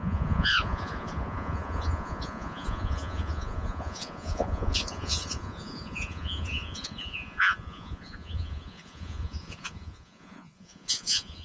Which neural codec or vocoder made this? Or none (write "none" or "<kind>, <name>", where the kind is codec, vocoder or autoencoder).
vocoder, Vocos